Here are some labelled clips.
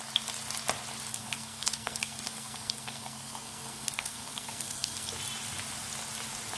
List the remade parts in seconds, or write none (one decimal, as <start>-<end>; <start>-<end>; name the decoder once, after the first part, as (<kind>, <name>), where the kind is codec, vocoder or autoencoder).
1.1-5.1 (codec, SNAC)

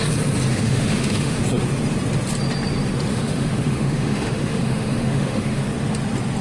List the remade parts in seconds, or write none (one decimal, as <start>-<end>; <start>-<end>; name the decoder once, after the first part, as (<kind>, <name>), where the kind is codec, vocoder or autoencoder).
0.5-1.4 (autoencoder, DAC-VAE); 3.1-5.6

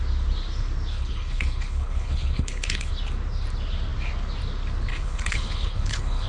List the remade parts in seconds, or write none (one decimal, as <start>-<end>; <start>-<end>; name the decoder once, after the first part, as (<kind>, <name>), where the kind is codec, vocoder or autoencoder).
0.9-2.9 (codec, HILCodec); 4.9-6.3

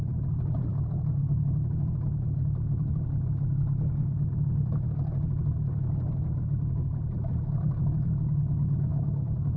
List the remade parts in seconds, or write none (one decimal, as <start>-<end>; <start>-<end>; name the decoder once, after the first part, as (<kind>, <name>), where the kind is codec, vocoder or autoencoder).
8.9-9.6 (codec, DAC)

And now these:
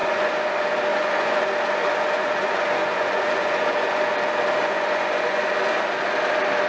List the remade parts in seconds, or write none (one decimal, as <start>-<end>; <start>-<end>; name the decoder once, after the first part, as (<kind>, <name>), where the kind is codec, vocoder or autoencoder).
0.0-0.5 (vocoder, Vocos); 0.9-1.4; 1.8-4.1; 4.6-5.5